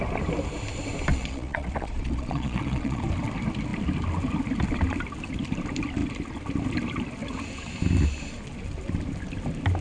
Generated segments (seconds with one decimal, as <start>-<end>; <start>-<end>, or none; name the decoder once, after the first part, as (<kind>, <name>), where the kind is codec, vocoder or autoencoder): 1.1-3.0 (vocoder, Vocos)